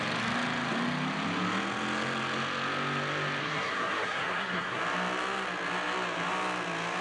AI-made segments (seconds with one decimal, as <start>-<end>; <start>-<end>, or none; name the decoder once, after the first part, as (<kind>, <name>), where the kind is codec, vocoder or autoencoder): 3.4-4.8 (codec, SNAC)